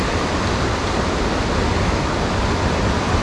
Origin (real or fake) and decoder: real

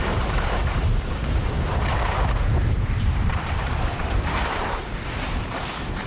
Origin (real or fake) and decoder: fake, vocoder, BigVGAN v2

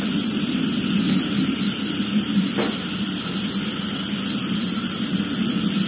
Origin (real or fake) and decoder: fake, vocoder, BigVGAN v2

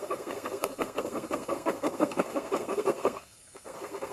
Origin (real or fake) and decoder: fake, codec, SNAC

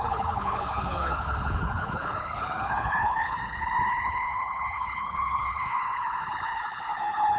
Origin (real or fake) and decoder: fake, codec, HILCodec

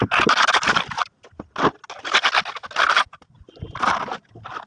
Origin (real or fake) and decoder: real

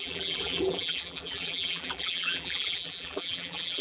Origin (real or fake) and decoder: fake, vocoder, BigVGAN v2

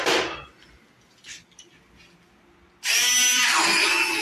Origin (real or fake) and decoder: real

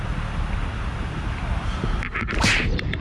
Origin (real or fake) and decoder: real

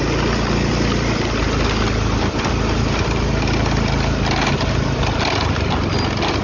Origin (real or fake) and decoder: real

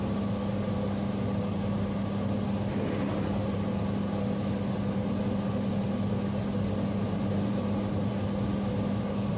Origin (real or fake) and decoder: real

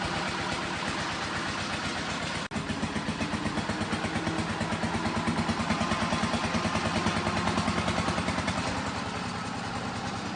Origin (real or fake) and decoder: real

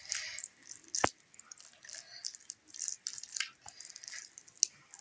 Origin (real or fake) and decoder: real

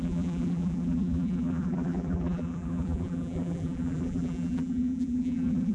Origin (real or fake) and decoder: fake, vocoder, BigVGAN v2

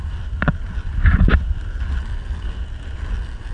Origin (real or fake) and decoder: real